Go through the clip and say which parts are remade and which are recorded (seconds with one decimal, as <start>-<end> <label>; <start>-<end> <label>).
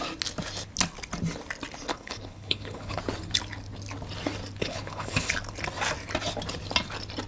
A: 0.0-1.9 recorded; 1.9-3.0 remade; 3.0-4.6 recorded; 4.6-5.3 remade; 5.3-7.3 recorded